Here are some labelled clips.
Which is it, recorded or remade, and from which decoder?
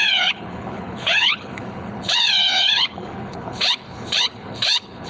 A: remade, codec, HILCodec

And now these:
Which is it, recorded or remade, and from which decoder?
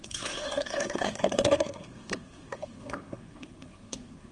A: remade, codec, SNAC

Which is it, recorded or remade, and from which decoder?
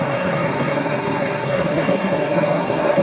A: remade, codec, SNAC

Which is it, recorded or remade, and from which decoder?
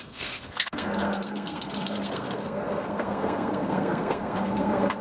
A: remade, codec, SNAC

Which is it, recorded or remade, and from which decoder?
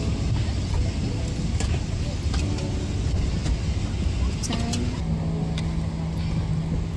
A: recorded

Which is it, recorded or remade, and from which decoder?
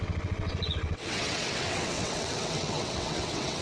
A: remade, vocoder, WaveNeXt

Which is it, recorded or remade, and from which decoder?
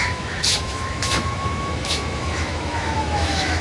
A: remade, autoencoder, DAC-VAE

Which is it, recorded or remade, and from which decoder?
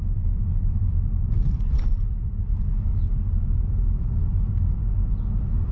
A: remade, vocoder, BigVGAN v2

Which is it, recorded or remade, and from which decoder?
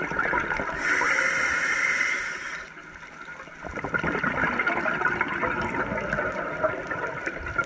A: recorded